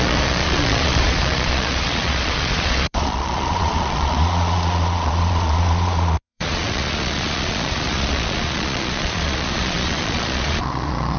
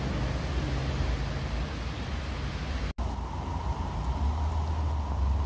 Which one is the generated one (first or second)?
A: first